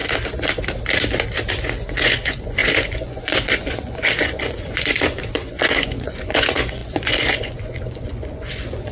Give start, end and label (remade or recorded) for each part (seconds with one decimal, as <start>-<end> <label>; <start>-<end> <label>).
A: 0.0-1.5 recorded; 1.5-8.9 remade